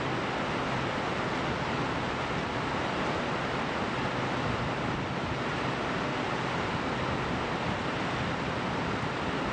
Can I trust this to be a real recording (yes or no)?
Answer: yes